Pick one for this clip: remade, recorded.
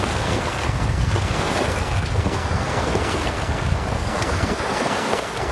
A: remade